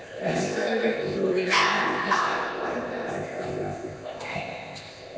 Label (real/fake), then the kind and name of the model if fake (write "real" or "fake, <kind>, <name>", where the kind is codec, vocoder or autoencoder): fake, codec, ZipCodec